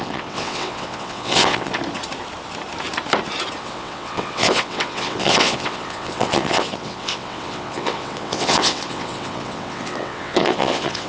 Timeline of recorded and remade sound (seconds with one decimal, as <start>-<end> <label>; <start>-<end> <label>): 0.0-1.7 remade; 1.7-3.6 recorded; 3.6-11.1 remade